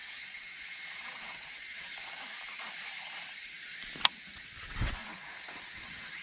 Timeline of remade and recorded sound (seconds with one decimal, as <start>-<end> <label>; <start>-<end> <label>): 0.0-1.9 remade; 1.9-4.1 recorded; 4.1-6.2 remade